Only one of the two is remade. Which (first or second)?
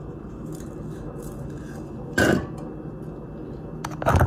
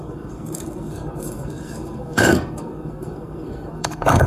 second